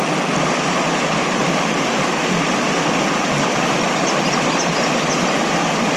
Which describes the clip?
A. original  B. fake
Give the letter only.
B